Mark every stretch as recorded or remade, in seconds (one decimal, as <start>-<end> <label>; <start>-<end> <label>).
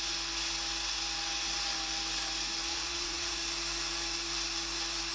0.0-2.7 recorded; 2.7-3.4 remade; 3.4-5.1 recorded